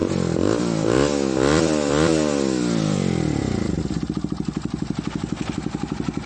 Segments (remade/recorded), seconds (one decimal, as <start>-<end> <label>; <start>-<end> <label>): 0.0-3.8 remade; 3.8-6.3 recorded